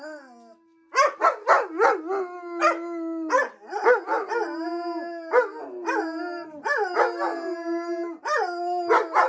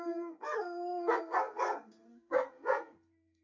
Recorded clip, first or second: first